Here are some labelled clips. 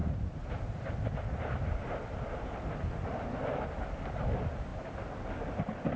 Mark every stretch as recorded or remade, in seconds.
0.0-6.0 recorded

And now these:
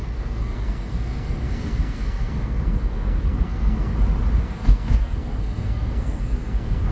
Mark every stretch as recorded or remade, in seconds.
0.0-3.9 remade; 3.9-4.4 recorded; 4.4-6.9 remade

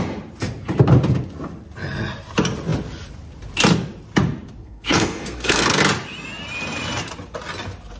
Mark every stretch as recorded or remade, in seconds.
0.0-4.6 recorded; 4.6-5.8 remade; 5.8-8.0 recorded

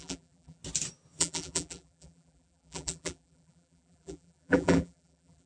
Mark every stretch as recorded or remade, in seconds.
0.0-0.6 remade; 0.6-1.2 recorded; 1.2-5.5 remade

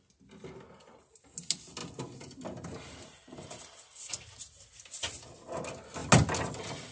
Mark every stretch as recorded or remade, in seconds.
0.0-6.9 recorded

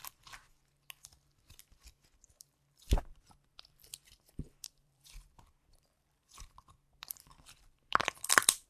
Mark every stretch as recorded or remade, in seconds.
0.0-3.0 recorded; 3.0-8.7 remade

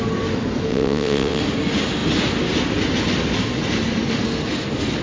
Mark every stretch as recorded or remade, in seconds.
0.0-0.7 recorded; 0.7-1.4 remade; 1.4-5.0 recorded

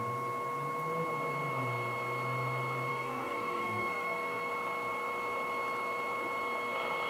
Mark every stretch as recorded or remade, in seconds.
0.0-2.9 recorded; 2.9-4.5 remade; 4.5-7.1 recorded